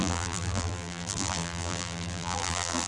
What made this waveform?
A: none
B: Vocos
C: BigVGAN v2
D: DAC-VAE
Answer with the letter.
C